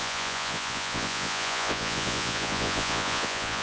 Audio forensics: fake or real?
fake